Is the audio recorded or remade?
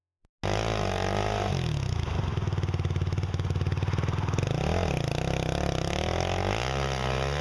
recorded